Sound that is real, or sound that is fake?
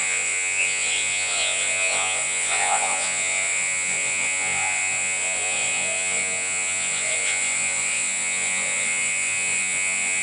fake